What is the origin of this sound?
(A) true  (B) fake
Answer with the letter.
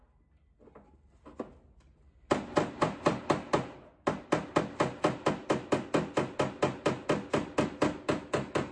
A